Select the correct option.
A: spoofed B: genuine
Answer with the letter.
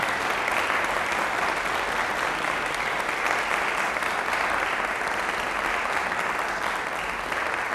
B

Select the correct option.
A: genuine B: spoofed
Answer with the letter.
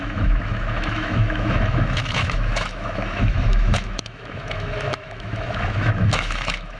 B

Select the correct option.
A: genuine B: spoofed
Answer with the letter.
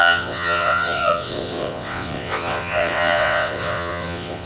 B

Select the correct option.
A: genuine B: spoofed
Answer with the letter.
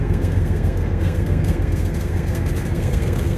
B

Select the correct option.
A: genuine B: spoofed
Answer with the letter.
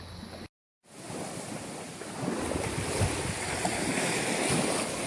A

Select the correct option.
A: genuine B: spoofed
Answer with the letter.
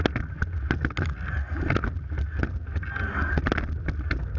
A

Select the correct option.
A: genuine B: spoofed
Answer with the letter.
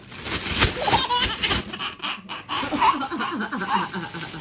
A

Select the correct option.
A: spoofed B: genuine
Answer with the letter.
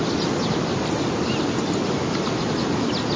B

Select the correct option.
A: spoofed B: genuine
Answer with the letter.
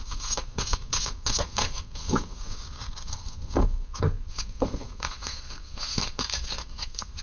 A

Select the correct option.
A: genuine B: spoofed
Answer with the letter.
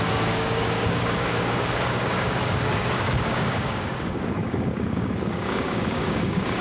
B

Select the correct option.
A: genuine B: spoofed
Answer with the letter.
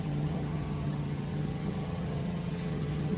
B